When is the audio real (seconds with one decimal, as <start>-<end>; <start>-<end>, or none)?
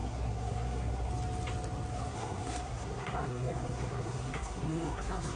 1.1-1.9